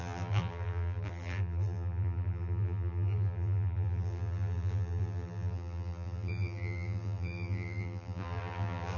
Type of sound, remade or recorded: remade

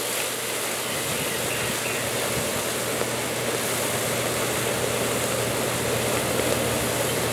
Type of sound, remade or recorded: recorded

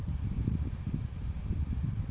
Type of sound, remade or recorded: recorded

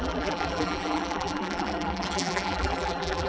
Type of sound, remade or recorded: remade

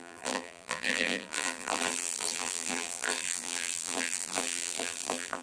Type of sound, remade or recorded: remade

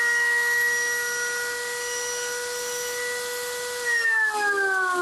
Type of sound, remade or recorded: recorded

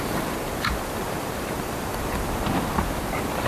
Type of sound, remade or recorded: remade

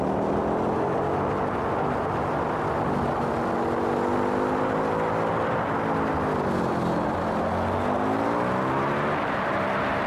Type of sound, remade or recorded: recorded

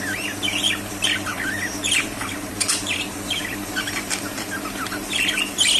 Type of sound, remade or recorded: remade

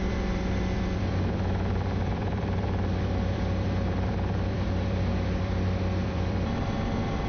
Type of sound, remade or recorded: remade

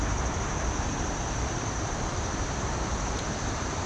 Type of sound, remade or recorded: recorded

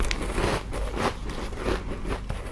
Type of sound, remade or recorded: recorded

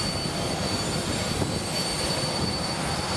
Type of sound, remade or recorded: recorded